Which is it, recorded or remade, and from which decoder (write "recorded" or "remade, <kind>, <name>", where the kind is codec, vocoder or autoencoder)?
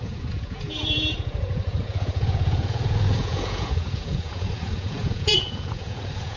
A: remade, vocoder, Vocos